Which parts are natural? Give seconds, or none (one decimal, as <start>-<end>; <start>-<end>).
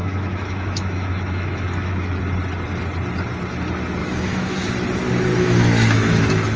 2.2-4.0; 4.7-5.3